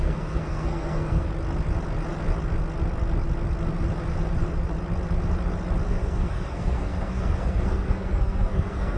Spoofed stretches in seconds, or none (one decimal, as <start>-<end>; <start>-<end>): 0.0-1.3; 5.9-9.0